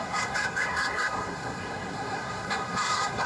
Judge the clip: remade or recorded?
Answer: remade